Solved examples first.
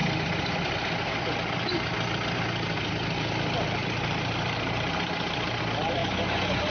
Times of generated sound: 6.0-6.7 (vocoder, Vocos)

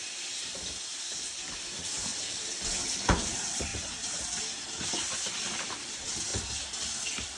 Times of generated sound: 3.7-4.2 (vocoder, BigVGAN v2)

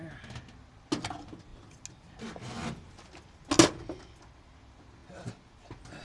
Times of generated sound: none

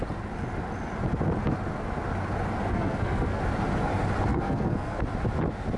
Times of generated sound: 2.7-3.4 (codec, SNAC); 4.3-5.0

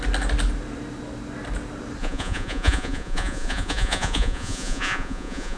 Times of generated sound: 2.0-5.6 (vocoder, Vocos)